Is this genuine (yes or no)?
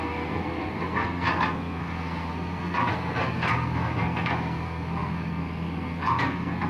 no